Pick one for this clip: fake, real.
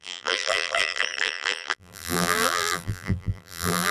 fake